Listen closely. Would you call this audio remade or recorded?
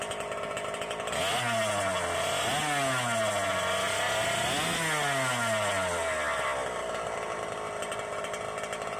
recorded